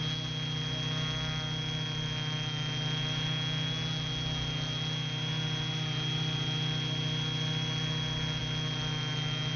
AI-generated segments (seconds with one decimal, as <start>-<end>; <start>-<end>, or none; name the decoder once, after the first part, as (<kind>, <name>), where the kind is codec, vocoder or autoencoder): none